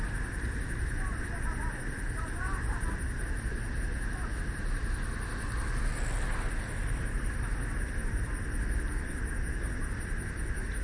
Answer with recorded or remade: recorded